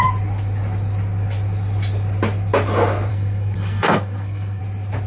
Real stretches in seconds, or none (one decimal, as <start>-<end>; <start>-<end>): 0.0-3.1; 4.6-5.1